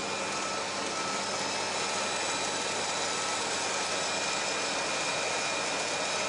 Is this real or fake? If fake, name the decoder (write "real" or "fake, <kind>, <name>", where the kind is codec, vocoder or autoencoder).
real